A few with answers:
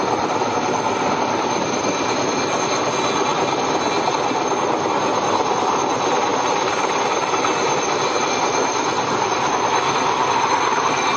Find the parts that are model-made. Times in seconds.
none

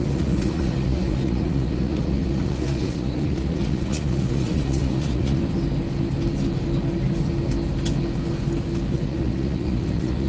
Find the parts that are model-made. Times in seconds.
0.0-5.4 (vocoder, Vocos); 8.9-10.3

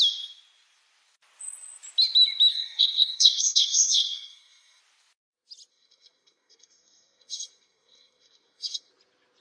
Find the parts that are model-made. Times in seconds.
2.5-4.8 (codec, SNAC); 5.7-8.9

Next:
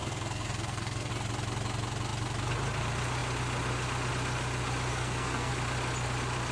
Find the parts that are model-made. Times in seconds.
0.0-1.1 (codec, SNAC); 4.9-5.5